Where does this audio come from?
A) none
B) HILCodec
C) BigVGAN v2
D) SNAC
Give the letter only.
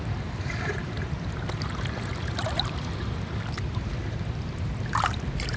C